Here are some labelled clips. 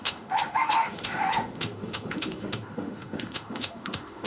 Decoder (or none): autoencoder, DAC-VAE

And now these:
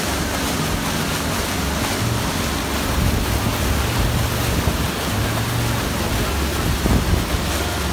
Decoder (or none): none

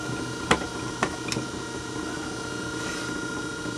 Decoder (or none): none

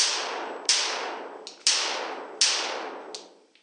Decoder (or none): none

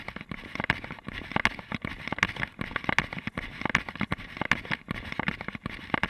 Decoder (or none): none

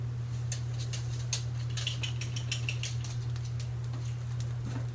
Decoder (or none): none